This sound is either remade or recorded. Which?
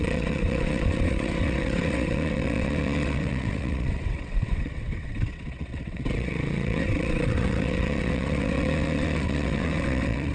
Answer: remade